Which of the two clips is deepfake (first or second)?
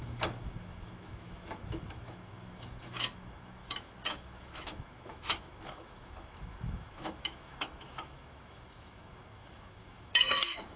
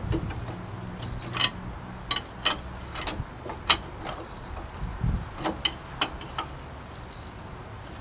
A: first